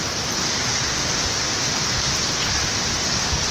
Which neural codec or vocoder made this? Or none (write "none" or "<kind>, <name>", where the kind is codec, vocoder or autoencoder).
none